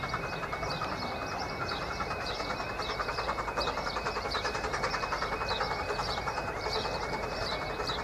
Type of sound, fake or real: fake